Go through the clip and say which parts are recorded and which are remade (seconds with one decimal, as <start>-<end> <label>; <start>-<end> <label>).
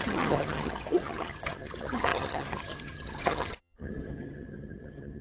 0.0-5.2 remade